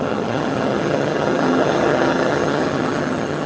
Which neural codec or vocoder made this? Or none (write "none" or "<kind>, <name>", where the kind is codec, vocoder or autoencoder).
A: vocoder, HiFi-GAN